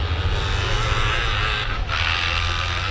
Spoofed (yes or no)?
no